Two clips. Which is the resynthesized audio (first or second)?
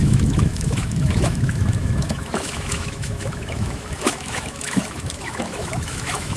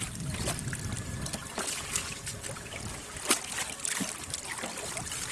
first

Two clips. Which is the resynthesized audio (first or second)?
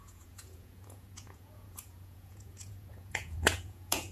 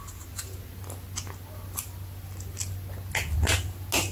first